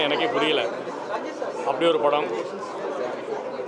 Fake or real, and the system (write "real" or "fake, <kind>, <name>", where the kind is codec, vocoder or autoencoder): real